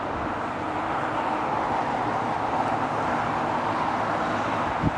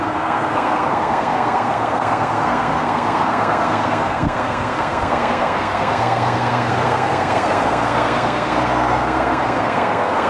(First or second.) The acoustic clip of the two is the first